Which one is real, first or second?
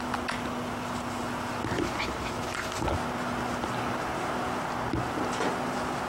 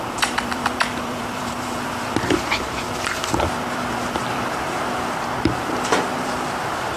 first